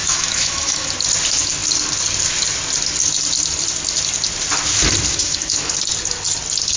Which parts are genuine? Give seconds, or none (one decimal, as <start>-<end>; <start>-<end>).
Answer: 0.9-5.1; 5.7-6.8